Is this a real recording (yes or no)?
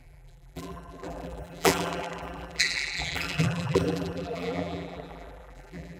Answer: no